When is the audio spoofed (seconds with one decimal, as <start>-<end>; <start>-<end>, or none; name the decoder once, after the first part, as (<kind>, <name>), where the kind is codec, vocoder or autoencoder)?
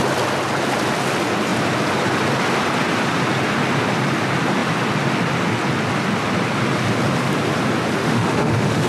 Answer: 8.0-8.9 (autoencoder, DAC-VAE)